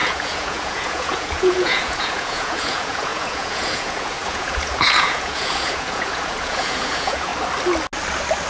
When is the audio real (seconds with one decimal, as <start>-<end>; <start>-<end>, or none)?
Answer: 7.3-8.5